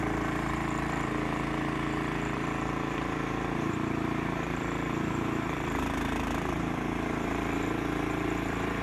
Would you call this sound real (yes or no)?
no